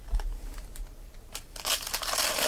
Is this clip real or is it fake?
fake